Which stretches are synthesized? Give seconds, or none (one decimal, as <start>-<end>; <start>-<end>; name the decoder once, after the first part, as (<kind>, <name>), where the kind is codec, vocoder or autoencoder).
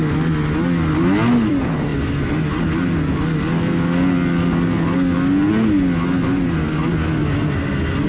none